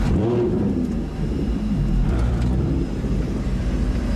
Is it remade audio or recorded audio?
remade